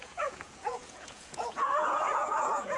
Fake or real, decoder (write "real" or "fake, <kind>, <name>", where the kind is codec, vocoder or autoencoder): fake, vocoder, Vocos